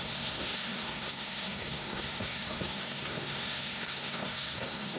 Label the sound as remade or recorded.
remade